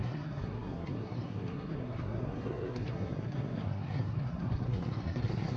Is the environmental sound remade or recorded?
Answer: remade